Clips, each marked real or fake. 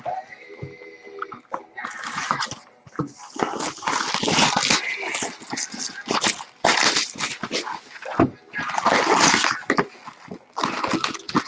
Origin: real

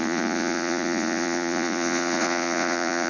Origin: fake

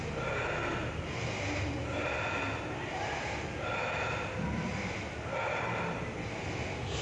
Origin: real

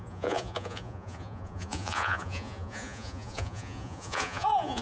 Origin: fake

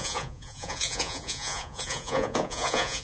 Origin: fake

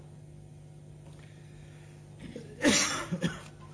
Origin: real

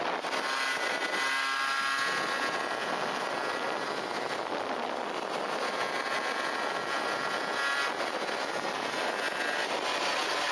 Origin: real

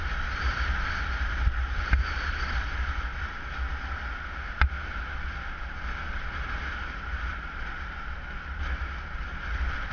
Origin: real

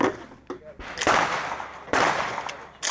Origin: real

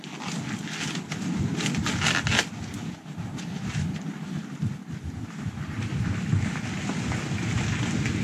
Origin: real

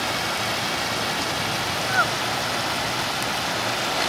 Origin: real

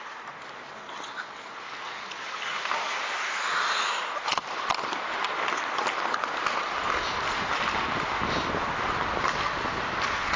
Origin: real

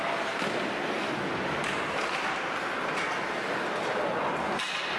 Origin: real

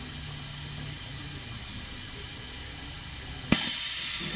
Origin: real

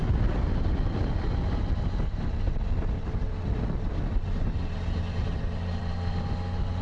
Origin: real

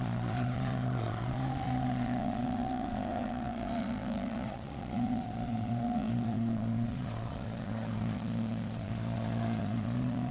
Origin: fake